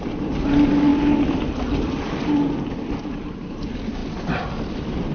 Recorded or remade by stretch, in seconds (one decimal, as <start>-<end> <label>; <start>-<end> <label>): 0.0-5.1 recorded